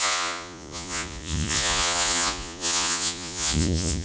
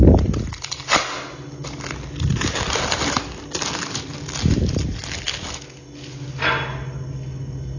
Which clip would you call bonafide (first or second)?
second